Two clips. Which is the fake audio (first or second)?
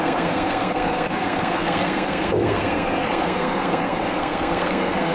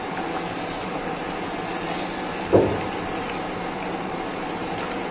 first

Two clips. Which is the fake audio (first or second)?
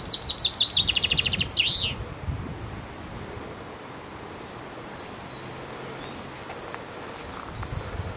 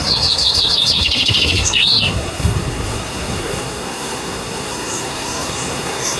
second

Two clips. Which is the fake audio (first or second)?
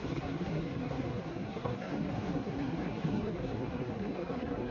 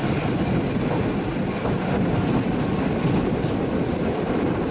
first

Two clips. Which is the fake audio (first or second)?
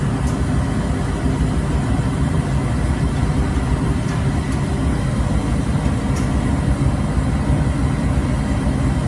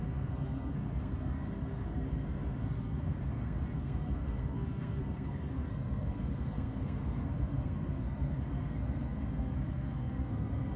second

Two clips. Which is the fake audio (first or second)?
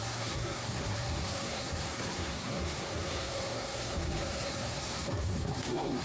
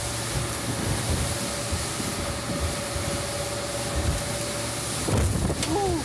first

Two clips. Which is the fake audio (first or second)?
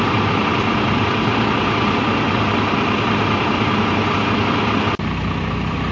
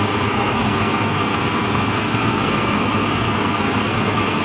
second